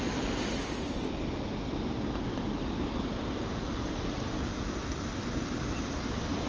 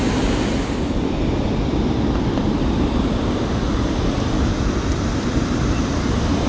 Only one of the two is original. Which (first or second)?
first